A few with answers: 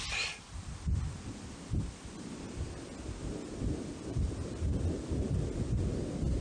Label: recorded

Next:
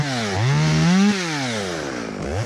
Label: recorded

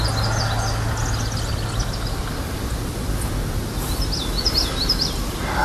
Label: recorded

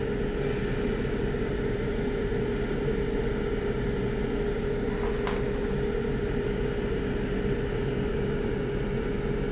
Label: recorded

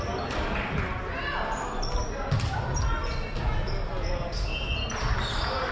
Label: recorded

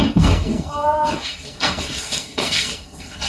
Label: remade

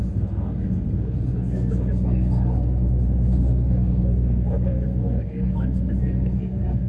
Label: remade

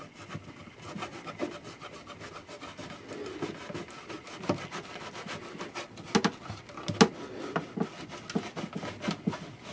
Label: recorded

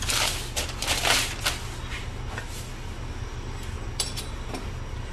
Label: recorded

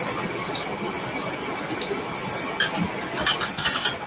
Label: recorded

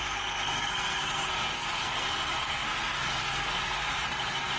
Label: remade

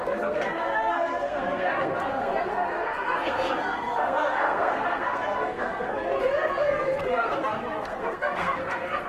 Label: remade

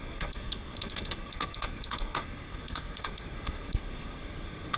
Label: remade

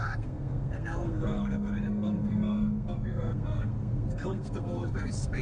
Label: remade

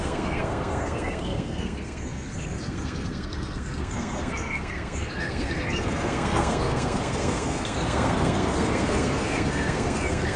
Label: remade